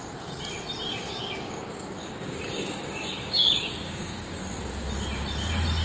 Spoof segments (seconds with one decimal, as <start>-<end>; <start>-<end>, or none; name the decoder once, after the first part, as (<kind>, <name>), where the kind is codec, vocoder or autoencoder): 0.9-4.4 (codec, DAC)